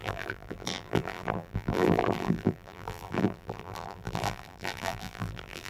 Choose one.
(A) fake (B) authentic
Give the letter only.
A